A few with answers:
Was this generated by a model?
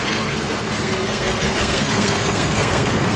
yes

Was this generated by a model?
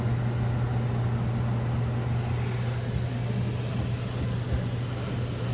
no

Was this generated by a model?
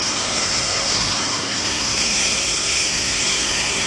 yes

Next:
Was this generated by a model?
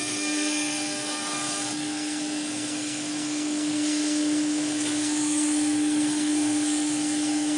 yes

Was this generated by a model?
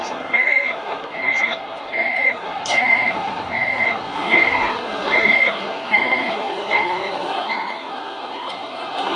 yes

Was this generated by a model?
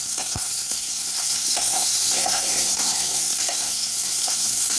yes